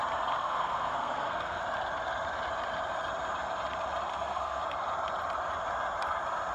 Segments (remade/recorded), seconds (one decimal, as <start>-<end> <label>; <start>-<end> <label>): 0.0-0.4 recorded; 0.4-1.6 remade; 1.6-4.1 recorded; 4.1-4.6 remade; 4.6-6.5 recorded